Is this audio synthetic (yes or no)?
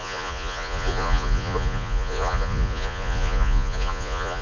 yes